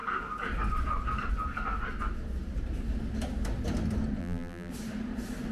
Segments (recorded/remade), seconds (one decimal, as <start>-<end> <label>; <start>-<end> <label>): 0.0-4.2 recorded; 4.2-4.7 remade; 4.7-5.5 recorded